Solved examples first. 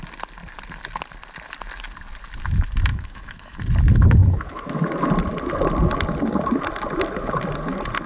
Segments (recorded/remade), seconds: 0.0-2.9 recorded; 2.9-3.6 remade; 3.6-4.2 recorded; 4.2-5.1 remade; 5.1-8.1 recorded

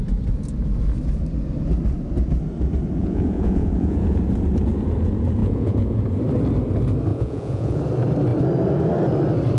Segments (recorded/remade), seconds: 0.0-3.0 recorded; 3.0-4.2 remade; 4.2-5.4 recorded; 5.4-6.0 remade; 6.0-7.1 recorded; 7.1-7.8 remade; 7.8-9.6 recorded

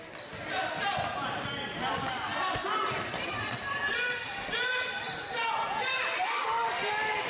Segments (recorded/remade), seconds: 0.0-2.3 recorded; 2.3-3.8 remade; 3.8-7.3 recorded